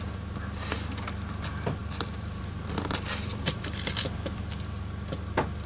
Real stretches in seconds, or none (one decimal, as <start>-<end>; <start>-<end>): 0.0-1.8; 4.4-5.7